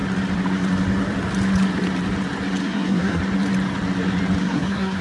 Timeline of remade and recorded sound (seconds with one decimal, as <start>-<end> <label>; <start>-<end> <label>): 0.0-2.6 recorded; 2.6-3.2 remade; 3.2-4.4 recorded; 4.4-5.0 remade